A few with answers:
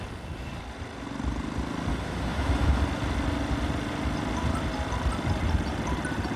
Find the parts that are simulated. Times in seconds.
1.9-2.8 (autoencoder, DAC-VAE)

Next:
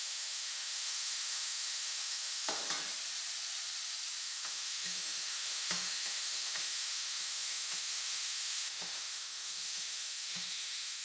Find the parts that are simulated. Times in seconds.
0.0-2.6 (autoencoder, DAC-VAE); 4.2-11.0

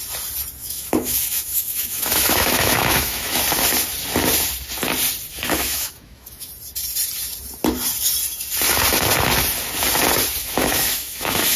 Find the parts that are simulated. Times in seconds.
0.6-3.4 (autoencoder, DAC-VAE); 5.3-6.5; 10.4-11.6

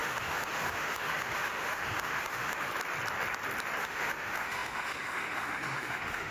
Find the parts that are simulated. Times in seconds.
0.0-2.7 (autoencoder, DAC-VAE); 3.8-6.3